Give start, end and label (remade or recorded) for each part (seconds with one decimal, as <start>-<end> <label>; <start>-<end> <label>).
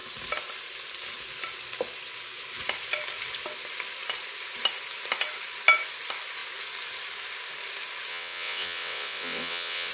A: 0.0-8.1 recorded; 8.1-9.9 remade